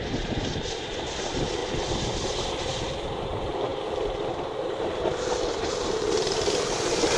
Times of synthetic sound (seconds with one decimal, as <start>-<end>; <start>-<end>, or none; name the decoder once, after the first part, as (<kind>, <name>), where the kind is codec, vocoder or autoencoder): 0.0-1.6 (vocoder, BigVGAN v2); 2.3-7.2